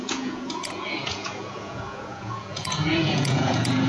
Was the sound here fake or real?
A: fake